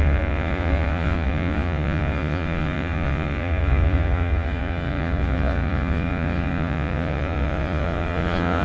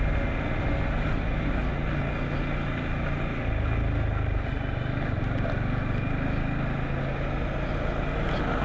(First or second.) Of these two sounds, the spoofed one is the first